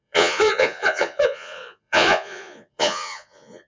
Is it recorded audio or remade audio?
remade